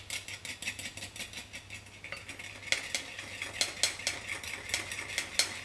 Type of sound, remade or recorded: recorded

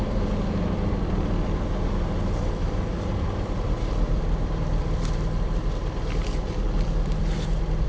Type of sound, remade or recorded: remade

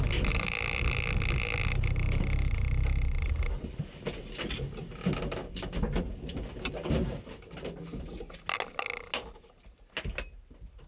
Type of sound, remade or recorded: recorded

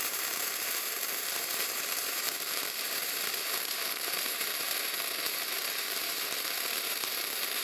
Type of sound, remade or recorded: remade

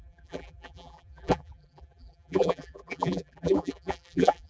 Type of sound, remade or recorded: remade